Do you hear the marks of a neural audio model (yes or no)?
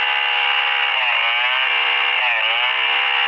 no